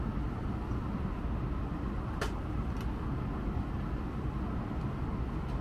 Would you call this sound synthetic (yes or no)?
no